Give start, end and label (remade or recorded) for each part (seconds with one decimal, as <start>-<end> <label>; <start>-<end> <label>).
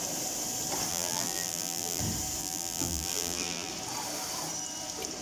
0.0-0.9 recorded; 0.9-2.0 remade; 2.0-2.4 recorded; 2.4-3.7 remade; 3.7-5.2 recorded